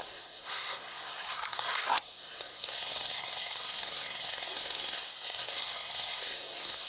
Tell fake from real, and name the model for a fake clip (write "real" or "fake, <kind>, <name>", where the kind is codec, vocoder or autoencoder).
fake, codec, SNAC